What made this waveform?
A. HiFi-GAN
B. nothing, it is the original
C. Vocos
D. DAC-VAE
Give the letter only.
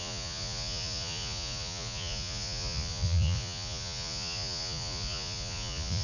C